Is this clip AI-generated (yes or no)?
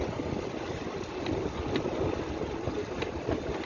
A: no